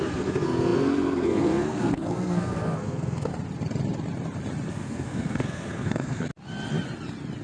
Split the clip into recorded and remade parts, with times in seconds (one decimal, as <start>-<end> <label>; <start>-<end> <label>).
0.0-3.3 remade; 3.3-4.7 recorded; 4.7-6.3 remade; 6.3-7.4 recorded